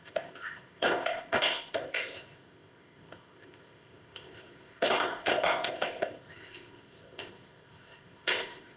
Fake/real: fake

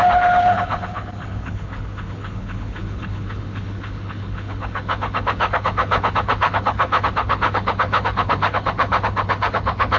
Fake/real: fake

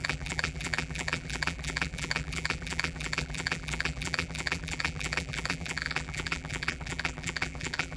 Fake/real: fake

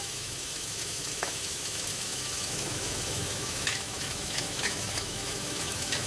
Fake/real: fake